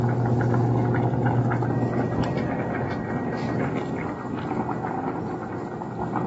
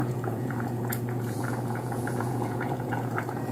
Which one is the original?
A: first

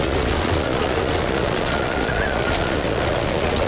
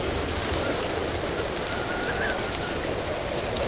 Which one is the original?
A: second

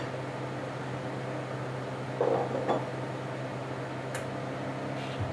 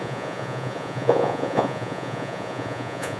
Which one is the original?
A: first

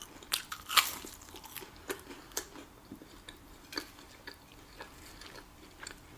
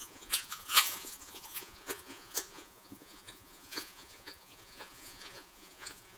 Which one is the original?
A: first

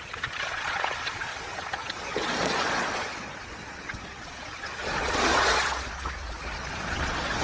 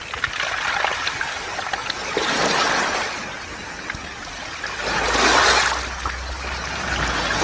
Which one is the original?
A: second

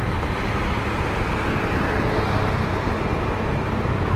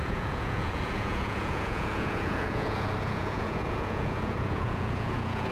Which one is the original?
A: first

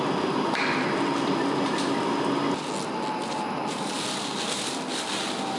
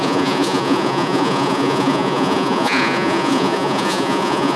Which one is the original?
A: first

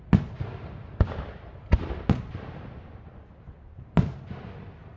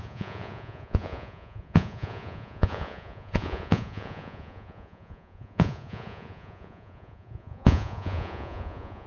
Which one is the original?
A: first